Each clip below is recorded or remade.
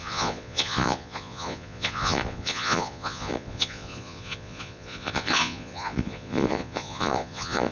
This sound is remade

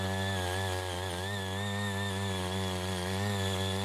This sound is recorded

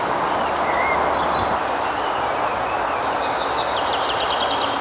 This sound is recorded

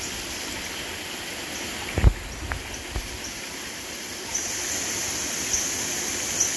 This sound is recorded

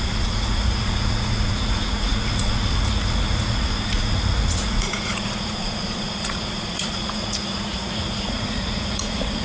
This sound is remade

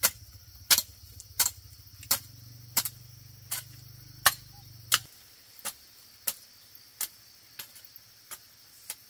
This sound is recorded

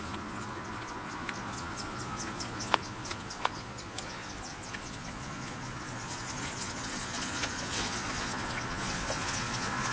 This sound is remade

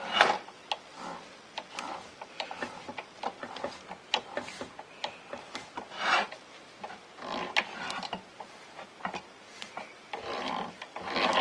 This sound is recorded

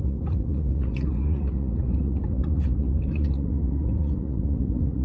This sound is remade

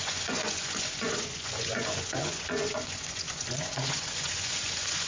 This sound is remade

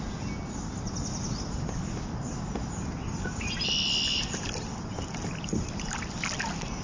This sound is recorded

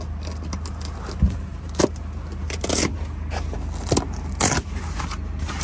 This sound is recorded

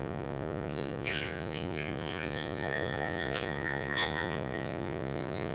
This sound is remade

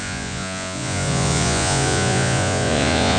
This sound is remade